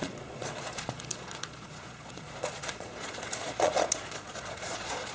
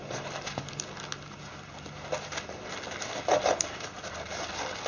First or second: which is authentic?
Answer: second